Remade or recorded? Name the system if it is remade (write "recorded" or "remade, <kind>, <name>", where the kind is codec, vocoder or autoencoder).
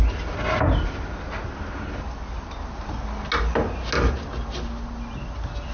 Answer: recorded